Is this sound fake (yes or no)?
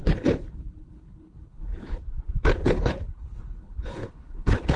yes